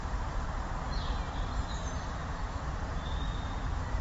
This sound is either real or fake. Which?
fake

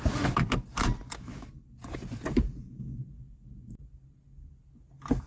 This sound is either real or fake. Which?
real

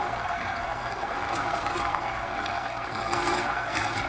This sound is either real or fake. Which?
fake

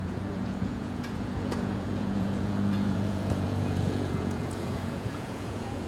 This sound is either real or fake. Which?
fake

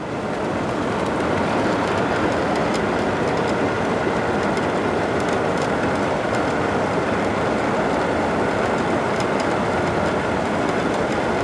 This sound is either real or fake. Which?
real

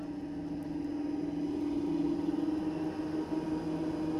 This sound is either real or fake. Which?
real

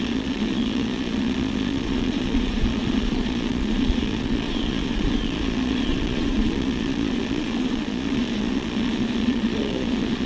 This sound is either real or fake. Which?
fake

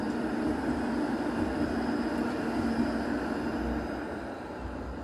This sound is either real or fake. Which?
real